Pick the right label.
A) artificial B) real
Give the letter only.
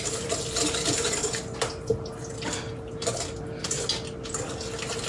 B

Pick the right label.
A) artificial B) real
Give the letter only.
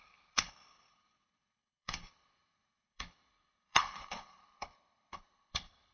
A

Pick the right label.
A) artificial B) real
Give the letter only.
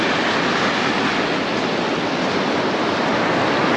B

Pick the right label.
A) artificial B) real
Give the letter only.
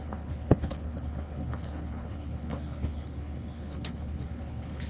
A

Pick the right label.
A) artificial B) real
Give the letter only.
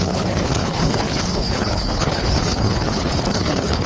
A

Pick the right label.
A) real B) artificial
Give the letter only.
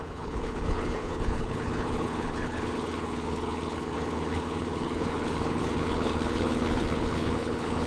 B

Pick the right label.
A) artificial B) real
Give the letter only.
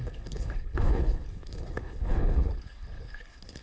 A